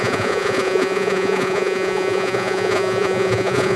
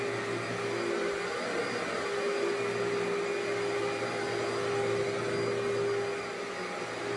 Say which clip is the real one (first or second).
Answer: second